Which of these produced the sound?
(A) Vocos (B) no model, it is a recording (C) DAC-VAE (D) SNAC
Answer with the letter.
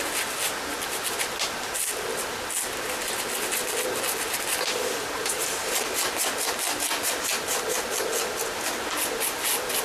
B